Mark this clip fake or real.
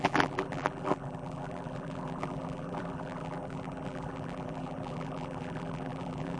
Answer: fake